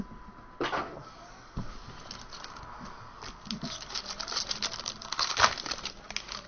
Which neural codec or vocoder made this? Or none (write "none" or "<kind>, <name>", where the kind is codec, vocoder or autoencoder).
none